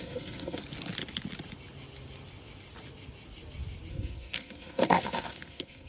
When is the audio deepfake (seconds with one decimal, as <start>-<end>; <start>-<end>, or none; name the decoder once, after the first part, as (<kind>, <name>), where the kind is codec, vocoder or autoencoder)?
0.0-0.6 (codec, SNAC); 3.9-5.9